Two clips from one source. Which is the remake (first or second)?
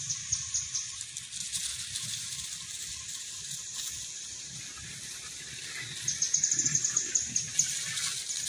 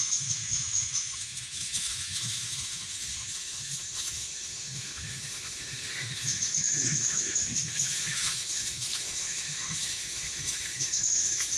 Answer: second